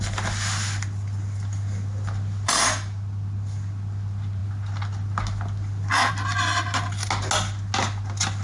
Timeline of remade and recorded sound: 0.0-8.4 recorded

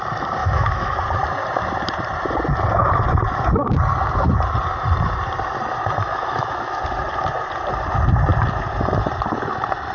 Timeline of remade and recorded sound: 0.0-0.4 recorded; 0.4-1.0 remade; 1.0-6.1 recorded; 6.1-6.8 remade; 6.8-9.9 recorded

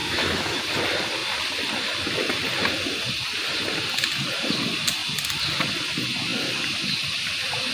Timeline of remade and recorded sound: 0.0-0.6 remade; 0.6-7.7 recorded

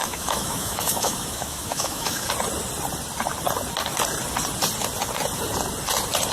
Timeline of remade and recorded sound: 0.0-2.3 remade; 2.3-6.3 recorded

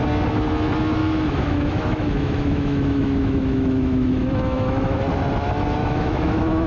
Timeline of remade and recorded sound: 0.0-1.0 recorded; 1.0-5.0 remade; 5.0-5.8 recorded; 5.8-6.7 remade

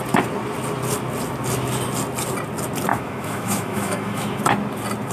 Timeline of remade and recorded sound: 0.0-2.9 recorded; 2.9-4.4 remade; 4.4-5.1 recorded